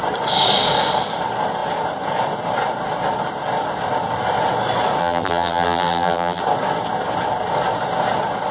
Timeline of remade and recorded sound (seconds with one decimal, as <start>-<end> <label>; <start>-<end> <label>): 0.0-5.0 recorded; 5.0-6.4 remade; 6.4-8.5 recorded